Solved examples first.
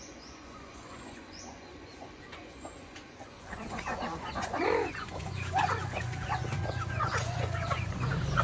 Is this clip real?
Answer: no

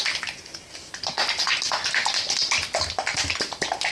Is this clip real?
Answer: yes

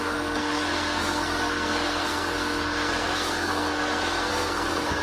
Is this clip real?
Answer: no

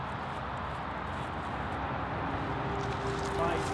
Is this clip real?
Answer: yes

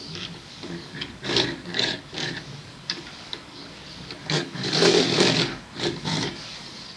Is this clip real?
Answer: no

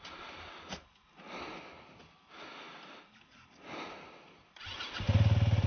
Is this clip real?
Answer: yes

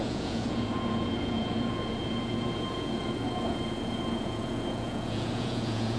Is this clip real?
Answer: no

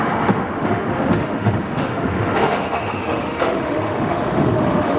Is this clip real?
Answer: no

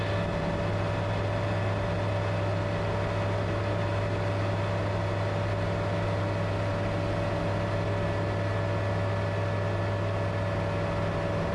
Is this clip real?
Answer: yes